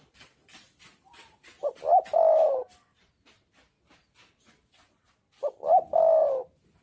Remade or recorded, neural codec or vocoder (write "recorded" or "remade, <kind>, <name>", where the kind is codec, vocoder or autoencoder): recorded